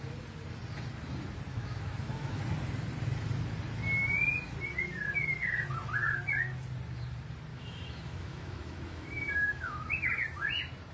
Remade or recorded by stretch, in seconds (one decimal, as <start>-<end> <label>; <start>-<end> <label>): 0.0-1.5 recorded; 1.5-2.4 remade; 2.4-7.5 recorded; 7.5-10.1 remade; 10.1-10.9 recorded